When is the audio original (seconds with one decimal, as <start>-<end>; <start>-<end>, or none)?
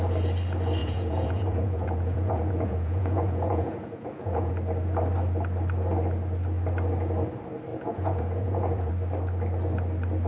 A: 0.0-0.8; 4.5-7.7; 8.9-10.3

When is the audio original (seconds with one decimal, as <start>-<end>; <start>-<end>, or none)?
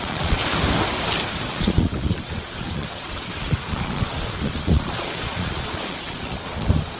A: 0.4-1.5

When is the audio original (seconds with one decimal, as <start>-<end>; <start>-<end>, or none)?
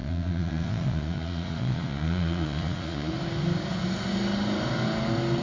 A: 3.1-5.4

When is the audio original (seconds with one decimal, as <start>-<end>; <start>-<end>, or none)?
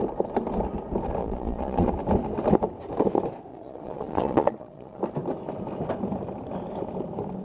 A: 0.0-1.2; 1.9-3.5; 5.0-7.4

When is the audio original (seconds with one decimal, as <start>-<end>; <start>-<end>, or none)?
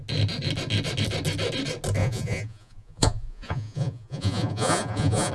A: 0.0-2.0